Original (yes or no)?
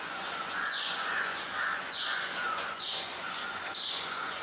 no